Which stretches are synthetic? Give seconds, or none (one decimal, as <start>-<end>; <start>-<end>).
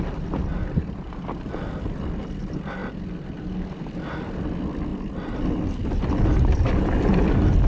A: 0.5-2.2